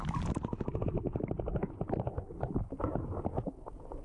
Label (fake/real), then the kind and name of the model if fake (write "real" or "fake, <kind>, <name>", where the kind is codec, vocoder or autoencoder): real